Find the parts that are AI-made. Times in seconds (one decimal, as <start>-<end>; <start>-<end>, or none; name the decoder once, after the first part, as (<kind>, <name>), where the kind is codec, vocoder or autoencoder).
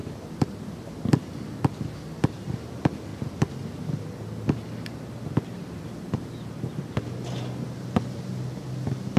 none